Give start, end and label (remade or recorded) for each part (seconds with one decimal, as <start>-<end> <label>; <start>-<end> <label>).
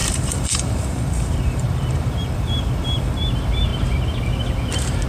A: 0.0-3.1 remade; 3.1-5.1 recorded